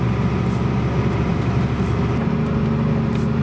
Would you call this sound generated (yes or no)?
no